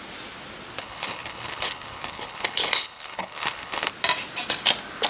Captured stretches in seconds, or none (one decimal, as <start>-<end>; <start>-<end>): 0.0-0.8; 3.9-5.1

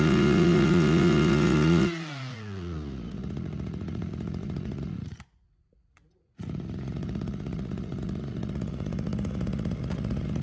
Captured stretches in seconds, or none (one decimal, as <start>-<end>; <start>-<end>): none

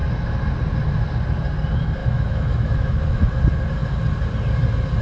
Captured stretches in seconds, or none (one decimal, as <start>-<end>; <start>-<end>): 0.0-2.0; 3.4-5.0

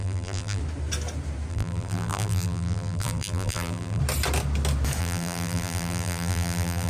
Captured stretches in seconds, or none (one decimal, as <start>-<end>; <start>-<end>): 0.6-1.5; 4.0-5.0

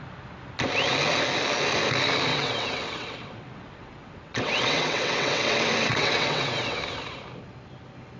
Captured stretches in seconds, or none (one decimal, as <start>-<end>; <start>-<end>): 0.0-2.3; 6.8-8.2

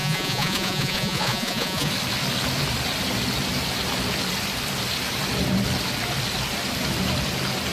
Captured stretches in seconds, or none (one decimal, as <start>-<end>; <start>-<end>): 1.9-7.7